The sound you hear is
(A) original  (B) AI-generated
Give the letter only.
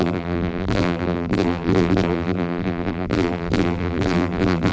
B